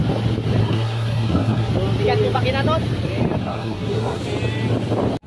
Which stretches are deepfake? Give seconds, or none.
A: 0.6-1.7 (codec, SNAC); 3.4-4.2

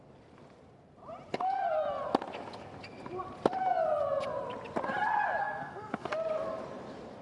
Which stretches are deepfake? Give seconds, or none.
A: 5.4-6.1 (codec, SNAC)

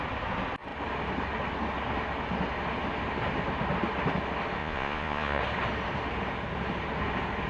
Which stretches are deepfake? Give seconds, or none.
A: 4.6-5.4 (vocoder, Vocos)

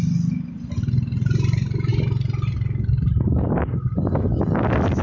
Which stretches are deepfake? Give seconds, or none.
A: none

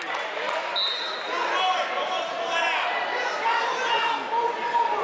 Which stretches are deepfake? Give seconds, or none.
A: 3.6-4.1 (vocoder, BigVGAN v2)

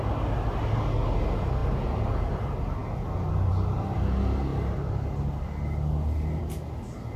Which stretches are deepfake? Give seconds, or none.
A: none

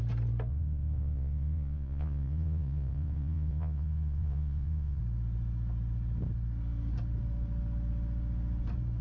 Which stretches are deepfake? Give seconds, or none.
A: 0.5-5.0 (vocoder, Vocos)

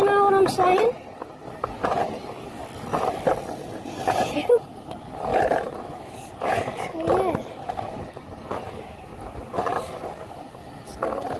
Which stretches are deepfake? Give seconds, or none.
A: 5.3-6.3 (vocoder, BigVGAN v2)